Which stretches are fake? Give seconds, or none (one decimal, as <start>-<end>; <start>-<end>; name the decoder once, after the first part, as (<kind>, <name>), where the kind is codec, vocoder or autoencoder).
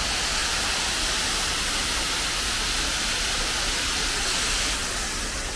4.8-5.6 (vocoder, BigVGAN v2)